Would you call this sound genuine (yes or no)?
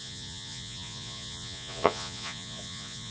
no